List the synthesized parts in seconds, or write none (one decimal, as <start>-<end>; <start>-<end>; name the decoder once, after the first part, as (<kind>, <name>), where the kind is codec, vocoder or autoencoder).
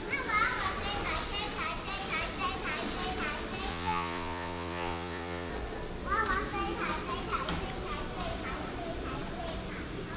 3.7-5.5 (vocoder, Vocos)